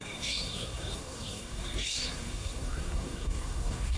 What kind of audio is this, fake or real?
fake